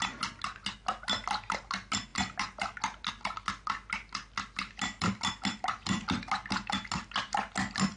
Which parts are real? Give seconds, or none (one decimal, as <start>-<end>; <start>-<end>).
0.0-8.0